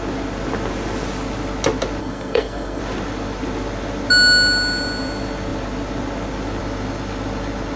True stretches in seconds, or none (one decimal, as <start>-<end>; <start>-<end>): 0.0-2.0; 2.8-7.8